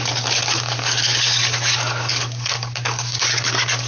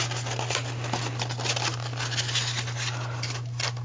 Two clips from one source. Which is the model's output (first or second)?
first